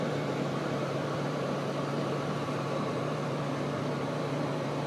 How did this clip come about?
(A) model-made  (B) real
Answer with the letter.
A